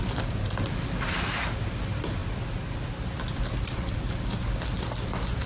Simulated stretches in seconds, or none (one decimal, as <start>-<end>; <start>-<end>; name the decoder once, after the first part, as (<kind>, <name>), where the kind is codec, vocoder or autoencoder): 2.2-4.0 (vocoder, BigVGAN v2)